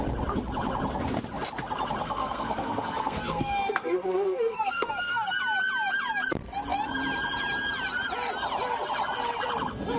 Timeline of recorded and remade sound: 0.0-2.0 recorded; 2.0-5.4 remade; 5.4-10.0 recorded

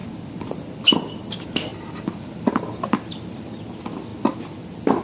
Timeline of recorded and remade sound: 0.0-5.0 recorded

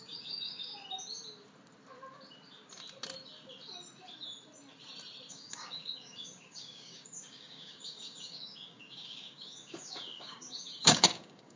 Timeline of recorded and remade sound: 0.0-0.7 remade; 0.7-5.3 recorded; 5.3-11.6 remade